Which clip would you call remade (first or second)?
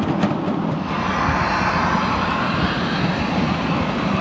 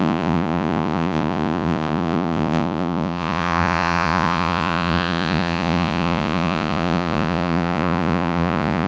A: second